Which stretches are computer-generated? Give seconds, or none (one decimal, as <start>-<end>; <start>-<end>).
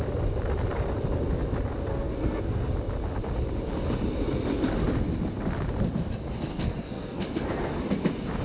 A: 1.9-2.6; 6.5-7.7